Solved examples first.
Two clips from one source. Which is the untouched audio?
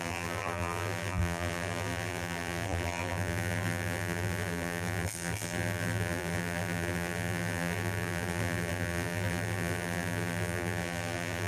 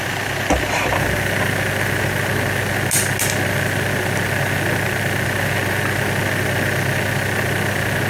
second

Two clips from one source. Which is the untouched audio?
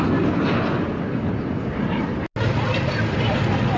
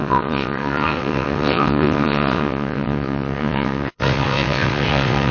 first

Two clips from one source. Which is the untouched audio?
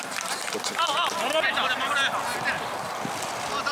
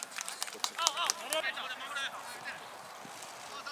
second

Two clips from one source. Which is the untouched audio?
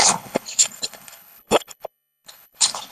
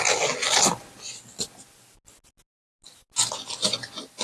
second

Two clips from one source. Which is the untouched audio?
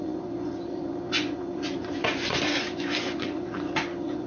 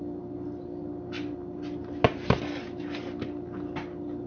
second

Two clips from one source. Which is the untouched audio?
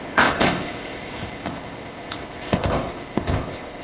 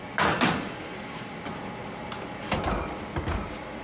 second